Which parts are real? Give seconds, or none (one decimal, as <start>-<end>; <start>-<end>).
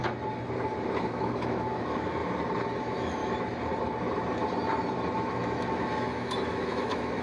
0.0-1.0; 2.2-2.8; 3.2-5.3